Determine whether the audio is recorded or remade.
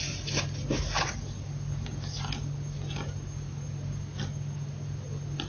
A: recorded